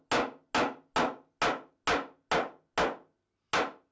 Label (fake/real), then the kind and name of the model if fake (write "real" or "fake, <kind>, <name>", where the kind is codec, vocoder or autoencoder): real